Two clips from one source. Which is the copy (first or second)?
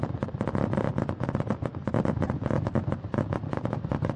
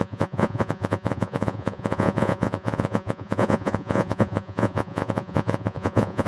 second